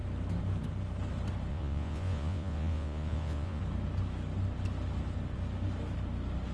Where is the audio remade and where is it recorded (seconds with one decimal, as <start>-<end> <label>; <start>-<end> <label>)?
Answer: 0.0-1.5 recorded; 1.5-3.6 remade; 3.6-6.5 recorded

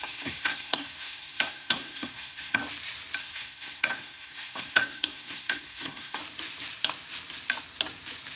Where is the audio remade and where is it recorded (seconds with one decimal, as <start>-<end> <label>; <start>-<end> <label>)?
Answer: 0.0-2.6 remade; 2.6-3.2 recorded; 3.2-6.2 remade; 6.2-8.4 recorded

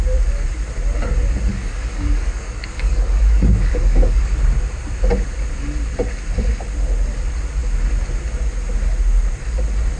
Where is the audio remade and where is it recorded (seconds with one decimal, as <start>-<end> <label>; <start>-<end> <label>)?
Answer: 0.0-1.5 recorded; 1.5-4.4 remade; 4.4-10.0 recorded

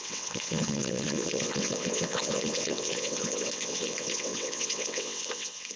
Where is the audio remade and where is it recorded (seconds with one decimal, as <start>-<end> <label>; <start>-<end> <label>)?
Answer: 0.0-5.8 remade